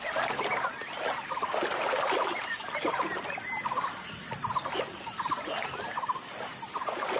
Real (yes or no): yes